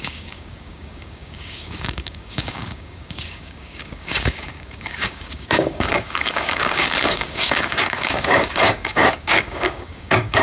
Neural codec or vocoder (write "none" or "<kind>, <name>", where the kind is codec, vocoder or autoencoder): codec, DAC